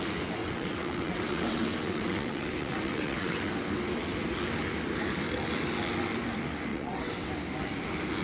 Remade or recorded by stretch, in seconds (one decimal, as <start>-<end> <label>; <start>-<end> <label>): 0.0-0.4 recorded; 0.4-3.5 remade; 3.5-6.7 recorded; 6.7-7.3 remade; 7.3-8.2 recorded

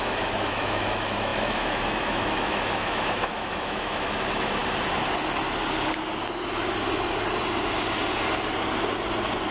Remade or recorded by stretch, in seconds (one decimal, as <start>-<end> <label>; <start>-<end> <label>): 0.0-4.6 remade; 4.6-9.5 recorded

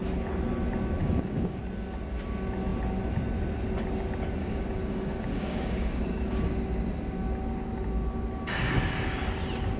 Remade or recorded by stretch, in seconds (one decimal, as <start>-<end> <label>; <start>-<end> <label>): 0.0-1.0 recorded; 1.0-1.6 remade; 1.6-4.4 recorded; 4.4-6.3 remade; 6.3-9.8 recorded

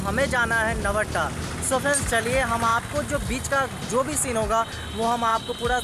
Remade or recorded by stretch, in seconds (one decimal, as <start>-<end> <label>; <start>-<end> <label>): 0.0-5.3 recorded; 5.3-5.8 remade